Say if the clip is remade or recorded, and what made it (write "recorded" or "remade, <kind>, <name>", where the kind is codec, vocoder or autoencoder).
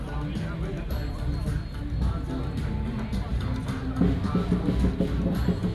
recorded